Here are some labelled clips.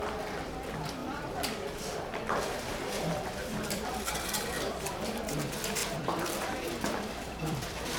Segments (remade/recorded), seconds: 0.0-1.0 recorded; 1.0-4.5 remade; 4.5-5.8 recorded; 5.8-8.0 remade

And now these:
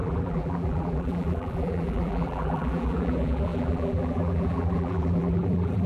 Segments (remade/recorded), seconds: 0.0-5.9 remade

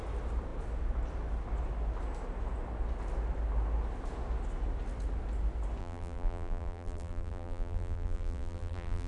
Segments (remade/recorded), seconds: 0.0-5.8 recorded; 5.8-9.1 remade

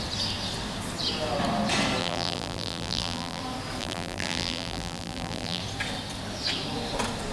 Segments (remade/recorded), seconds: 0.0-2.0 recorded; 2.0-3.4 remade; 3.4-3.8 recorded; 3.8-5.6 remade; 5.6-7.3 recorded

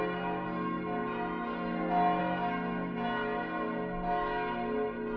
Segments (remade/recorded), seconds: 0.0-5.2 recorded